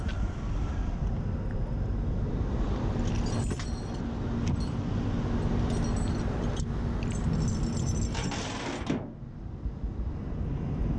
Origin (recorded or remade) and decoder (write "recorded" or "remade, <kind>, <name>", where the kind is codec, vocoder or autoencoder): recorded